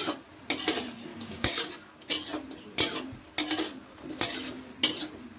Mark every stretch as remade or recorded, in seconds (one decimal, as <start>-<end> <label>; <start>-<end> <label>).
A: 0.0-1.1 recorded; 1.1-1.7 remade; 1.7-5.4 recorded